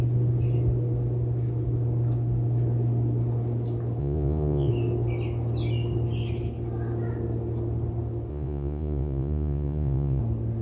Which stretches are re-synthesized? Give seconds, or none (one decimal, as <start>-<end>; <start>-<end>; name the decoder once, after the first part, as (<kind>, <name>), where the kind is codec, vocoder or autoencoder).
4.0-4.7 (vocoder, Vocos); 8.3-10.2